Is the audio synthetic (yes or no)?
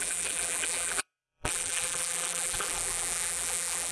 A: yes